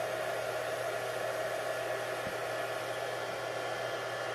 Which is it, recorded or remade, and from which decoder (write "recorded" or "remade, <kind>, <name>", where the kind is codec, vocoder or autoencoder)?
recorded